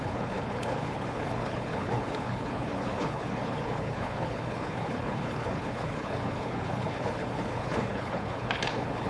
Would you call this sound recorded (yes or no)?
no